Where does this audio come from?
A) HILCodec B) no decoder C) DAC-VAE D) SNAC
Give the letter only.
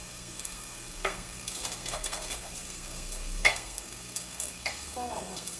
D